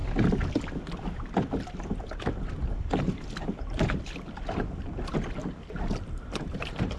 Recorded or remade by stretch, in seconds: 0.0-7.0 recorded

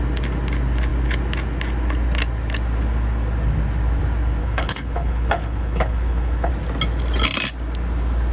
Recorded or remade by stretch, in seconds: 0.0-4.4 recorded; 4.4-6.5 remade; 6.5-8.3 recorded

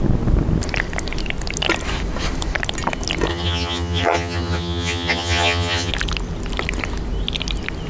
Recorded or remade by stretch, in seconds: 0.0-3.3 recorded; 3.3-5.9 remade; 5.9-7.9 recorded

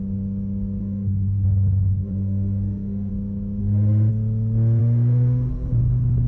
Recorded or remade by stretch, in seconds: 0.0-0.8 recorded; 0.8-3.1 remade; 3.1-3.6 recorded; 3.6-4.1 remade; 4.1-4.8 recorded; 4.8-5.5 remade; 5.5-6.3 recorded

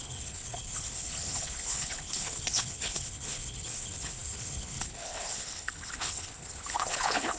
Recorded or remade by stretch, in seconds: 0.0-7.4 remade